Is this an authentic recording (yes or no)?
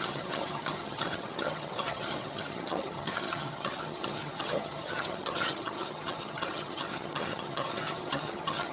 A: no